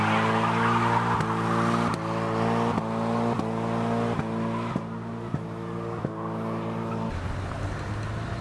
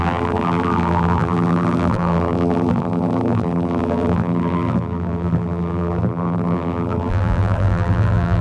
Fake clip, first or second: second